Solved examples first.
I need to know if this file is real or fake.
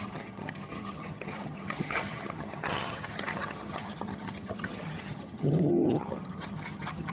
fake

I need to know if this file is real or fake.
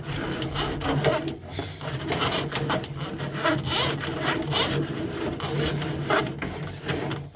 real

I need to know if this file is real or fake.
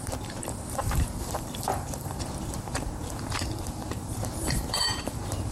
fake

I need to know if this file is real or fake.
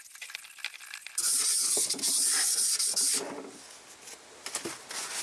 real